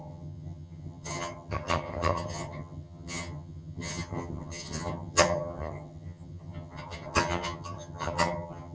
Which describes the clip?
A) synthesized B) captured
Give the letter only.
A